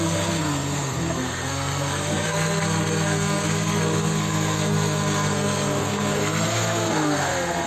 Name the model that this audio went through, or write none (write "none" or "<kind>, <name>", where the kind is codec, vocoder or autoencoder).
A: codec, SNAC